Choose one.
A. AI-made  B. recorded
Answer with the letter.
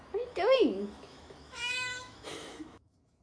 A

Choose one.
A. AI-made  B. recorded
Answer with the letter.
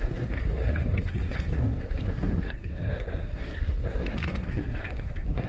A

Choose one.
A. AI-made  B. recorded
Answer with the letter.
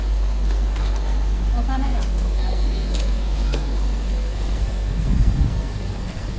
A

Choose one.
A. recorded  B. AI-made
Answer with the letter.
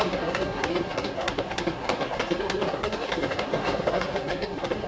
B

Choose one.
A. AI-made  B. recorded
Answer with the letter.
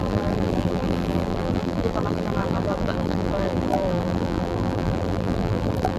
A